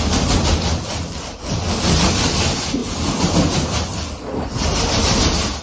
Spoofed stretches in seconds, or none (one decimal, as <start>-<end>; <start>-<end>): none